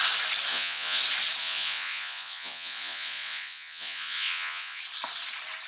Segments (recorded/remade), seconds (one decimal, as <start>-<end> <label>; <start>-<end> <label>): 0.0-0.5 recorded; 0.5-1.0 remade; 1.0-1.4 recorded; 1.4-4.8 remade; 4.8-5.7 recorded